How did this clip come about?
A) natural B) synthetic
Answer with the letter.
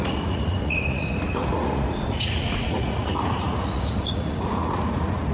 B